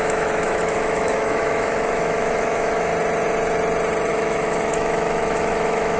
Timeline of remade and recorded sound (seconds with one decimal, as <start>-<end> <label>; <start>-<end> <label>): 0.0-2.9 remade; 2.9-4.1 recorded; 4.1-6.0 remade